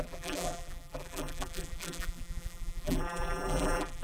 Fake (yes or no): yes